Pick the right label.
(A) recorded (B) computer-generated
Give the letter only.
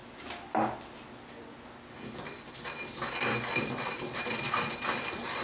A